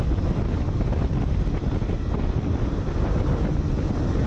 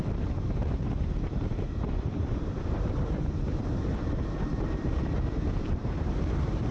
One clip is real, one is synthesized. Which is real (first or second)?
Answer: first